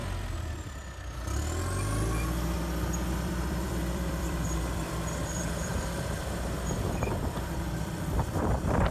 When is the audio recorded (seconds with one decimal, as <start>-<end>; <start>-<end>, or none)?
0.0-3.2